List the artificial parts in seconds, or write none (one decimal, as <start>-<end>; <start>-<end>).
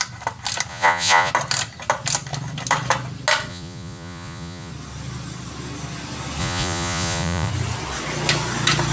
0.7-1.3; 3.5-4.7; 6.4-7.5